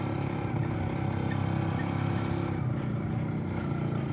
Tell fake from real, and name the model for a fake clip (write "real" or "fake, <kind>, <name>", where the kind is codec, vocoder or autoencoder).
real